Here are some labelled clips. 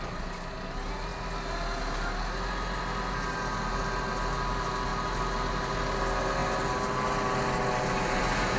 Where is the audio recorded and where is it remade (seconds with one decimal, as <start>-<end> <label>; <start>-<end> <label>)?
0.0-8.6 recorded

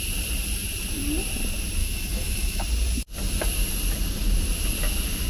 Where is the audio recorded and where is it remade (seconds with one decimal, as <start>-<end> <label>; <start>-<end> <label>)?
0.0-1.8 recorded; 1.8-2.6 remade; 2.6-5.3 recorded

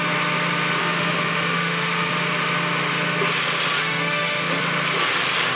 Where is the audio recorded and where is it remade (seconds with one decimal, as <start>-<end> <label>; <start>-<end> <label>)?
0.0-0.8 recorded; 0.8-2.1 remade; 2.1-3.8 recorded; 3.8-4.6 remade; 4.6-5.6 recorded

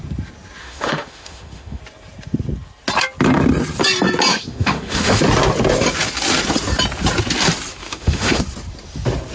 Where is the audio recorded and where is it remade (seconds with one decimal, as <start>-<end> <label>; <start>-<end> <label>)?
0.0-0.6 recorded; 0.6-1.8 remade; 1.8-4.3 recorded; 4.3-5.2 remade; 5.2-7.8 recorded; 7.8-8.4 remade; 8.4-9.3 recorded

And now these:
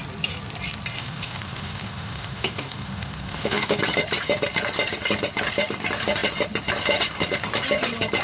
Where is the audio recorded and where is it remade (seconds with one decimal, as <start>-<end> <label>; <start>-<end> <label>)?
0.0-1.0 recorded; 1.0-3.8 remade; 3.8-8.2 recorded

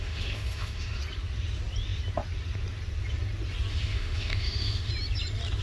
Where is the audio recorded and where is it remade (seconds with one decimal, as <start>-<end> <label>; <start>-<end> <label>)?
0.0-1.0 remade; 1.0-3.7 recorded; 3.7-4.9 remade; 4.9-5.6 recorded